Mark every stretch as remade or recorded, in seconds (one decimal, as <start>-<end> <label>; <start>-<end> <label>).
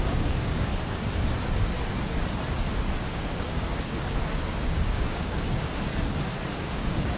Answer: 0.0-0.7 remade; 0.7-3.1 recorded; 3.1-5.9 remade; 5.9-6.5 recorded; 6.5-7.2 remade